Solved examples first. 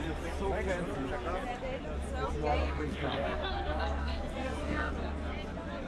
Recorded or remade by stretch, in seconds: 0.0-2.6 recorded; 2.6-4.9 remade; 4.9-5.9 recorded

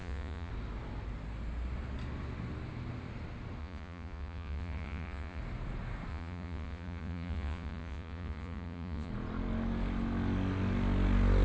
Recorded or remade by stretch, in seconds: 0.0-0.5 remade; 0.5-3.6 recorded; 3.6-5.4 remade; 5.4-6.1 recorded; 6.1-9.1 remade; 9.1-11.4 recorded

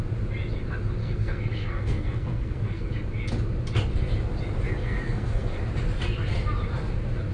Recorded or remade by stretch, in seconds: 0.0-1.0 recorded; 1.0-2.9 remade; 2.9-4.8 recorded; 4.8-5.6 remade; 5.6-7.3 recorded

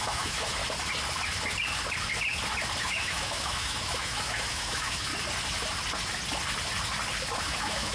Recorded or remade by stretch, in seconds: 0.0-0.6 remade; 0.6-2.8 recorded; 2.8-5.1 remade; 5.1-7.4 recorded; 7.4-7.9 remade

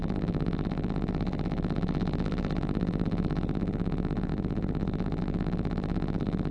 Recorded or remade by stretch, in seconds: 0.0-6.5 remade

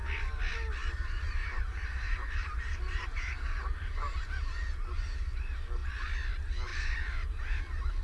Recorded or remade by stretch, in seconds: 0.0-0.8 recorded; 0.8-4.6 remade; 4.6-6.7 recorded; 6.7-7.6 remade; 7.6-8.0 recorded

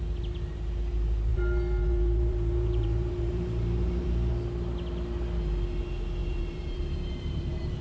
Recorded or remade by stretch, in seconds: 0.0-1.3 recorded; 1.3-4.3 remade; 4.3-6.2 recorded; 6.2-7.8 remade

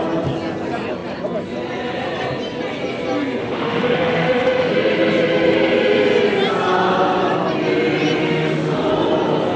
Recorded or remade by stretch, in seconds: 0.0-3.4 recorded; 3.4-4.7 remade; 4.7-8.2 recorded; 8.2-8.9 remade; 8.9-9.6 recorded